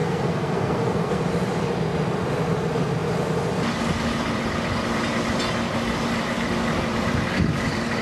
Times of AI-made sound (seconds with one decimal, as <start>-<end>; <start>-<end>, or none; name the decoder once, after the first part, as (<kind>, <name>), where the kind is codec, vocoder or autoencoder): 0.0-1.2 (codec, SNAC)